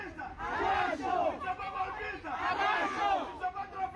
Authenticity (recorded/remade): recorded